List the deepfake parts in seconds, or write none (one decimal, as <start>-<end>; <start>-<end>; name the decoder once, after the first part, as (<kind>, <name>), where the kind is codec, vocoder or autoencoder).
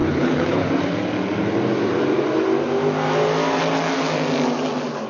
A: 0.0-0.7 (codec, HILCodec)